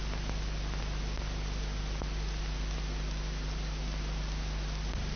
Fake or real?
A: real